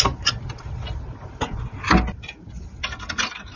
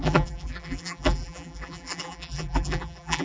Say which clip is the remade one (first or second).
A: second